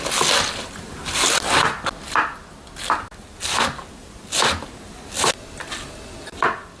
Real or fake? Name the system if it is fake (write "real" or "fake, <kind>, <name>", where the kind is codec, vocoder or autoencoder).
real